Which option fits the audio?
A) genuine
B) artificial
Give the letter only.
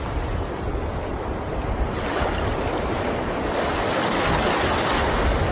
A